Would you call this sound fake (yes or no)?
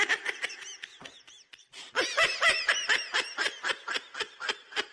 no